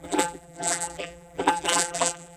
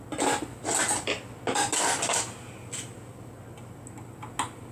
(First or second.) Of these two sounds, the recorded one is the second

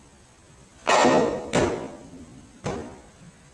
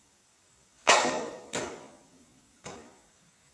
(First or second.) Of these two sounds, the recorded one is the first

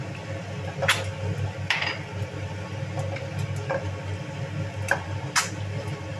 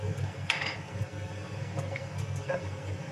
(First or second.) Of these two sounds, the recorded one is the first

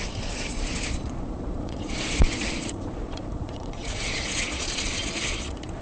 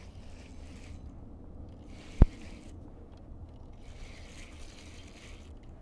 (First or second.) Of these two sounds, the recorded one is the second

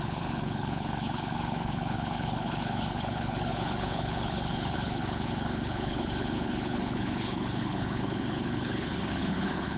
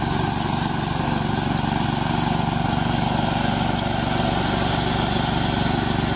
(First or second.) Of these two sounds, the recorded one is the second